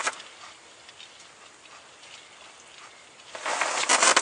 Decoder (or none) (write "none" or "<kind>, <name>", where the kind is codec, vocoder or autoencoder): none